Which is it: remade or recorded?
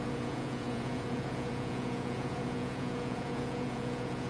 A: remade